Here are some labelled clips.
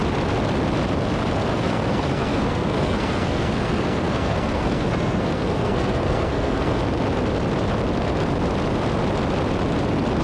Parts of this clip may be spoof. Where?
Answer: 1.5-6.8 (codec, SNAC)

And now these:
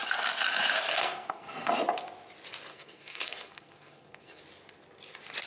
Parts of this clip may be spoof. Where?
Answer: 0.9-1.7 (codec, SNAC); 2.7-4.4

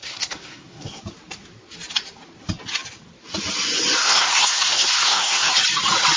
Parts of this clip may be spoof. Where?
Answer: 0.0-1.0 (codec, SNAC); 4.0-5.5

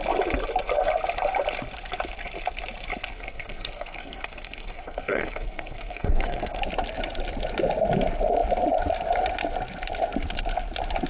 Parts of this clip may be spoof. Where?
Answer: 3.1-6.6 (codec, SNAC)

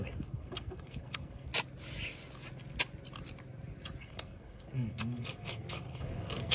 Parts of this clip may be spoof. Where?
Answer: 0.0-1.5 (codec, SNAC); 4.0-6.5

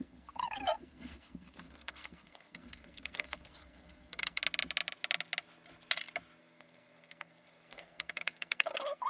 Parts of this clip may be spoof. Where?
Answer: 0.0-4.4 (codec, SNAC); 6.4-9.1